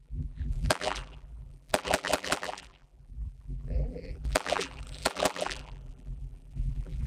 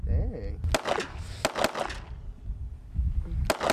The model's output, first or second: first